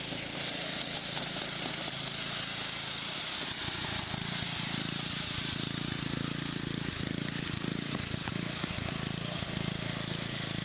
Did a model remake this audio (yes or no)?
no